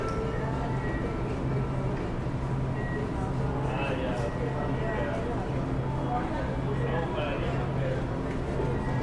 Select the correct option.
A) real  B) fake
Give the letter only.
A